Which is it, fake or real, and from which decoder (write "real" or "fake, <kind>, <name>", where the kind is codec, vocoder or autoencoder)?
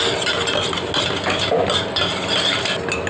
real